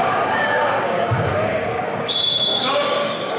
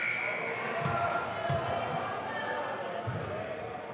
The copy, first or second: first